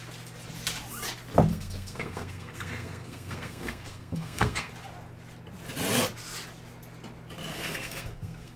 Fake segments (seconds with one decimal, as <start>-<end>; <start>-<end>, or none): 1.5-4.7; 7.5-8.6